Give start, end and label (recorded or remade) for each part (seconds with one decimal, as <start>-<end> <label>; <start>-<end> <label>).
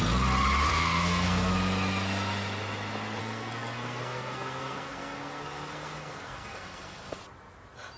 0.0-0.7 recorded; 0.7-1.5 remade; 1.5-3.2 recorded; 3.2-7.2 remade; 7.2-8.0 recorded